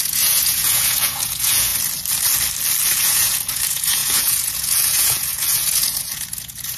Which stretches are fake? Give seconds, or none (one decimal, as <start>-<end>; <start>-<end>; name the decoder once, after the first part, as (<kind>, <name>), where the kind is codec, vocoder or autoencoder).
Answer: 0.0-1.7 (vocoder, Vocos); 2.9-6.8